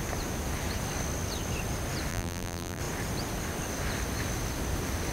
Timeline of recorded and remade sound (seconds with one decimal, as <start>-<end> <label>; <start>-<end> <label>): 0.0-2.1 recorded; 2.1-2.8 remade; 2.8-5.1 recorded